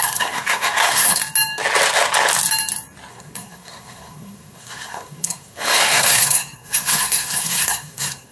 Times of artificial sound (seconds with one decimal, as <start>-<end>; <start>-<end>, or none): 0.0-1.2; 3.1-8.3